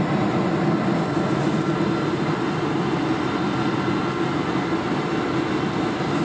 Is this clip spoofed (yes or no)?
no